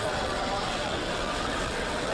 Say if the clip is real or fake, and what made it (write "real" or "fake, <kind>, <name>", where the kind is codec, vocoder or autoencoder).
fake, vocoder, WaveNeXt